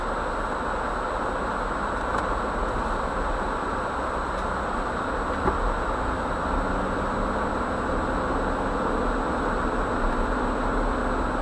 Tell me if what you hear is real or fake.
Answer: real